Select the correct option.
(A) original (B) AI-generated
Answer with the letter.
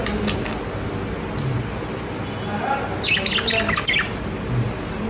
A